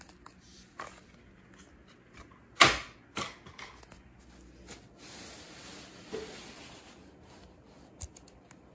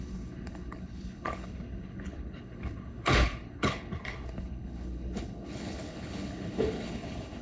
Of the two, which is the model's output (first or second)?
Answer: second